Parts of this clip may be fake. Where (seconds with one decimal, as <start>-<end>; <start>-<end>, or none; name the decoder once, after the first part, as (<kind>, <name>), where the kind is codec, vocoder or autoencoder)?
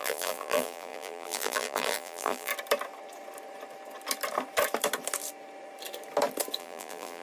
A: 0.0-2.5 (vocoder, BigVGAN v2); 6.6-7.2